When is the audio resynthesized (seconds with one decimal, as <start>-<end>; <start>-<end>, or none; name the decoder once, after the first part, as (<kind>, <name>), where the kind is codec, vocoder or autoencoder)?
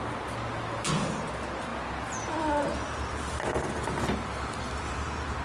none